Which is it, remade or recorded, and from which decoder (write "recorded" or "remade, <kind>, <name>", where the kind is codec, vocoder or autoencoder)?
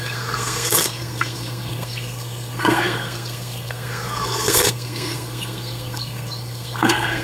remade, codec, SNAC